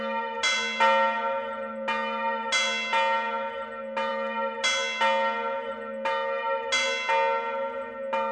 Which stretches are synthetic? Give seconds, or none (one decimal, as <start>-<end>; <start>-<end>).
none